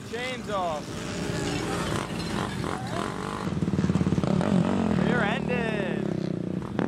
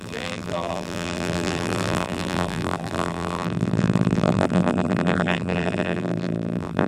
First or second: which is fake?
second